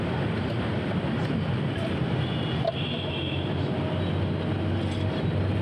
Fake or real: real